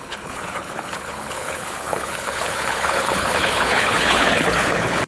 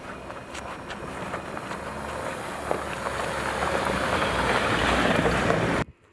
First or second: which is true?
second